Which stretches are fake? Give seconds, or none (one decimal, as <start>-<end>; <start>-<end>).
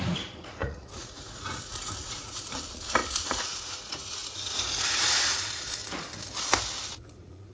0.0-5.8; 6.8-7.5